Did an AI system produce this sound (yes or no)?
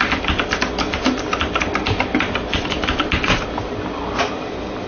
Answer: no